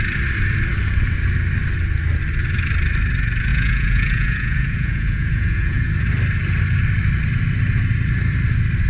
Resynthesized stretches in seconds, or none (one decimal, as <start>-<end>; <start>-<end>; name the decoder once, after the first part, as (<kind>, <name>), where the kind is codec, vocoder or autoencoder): 3.5-5.9 (vocoder, Vocos)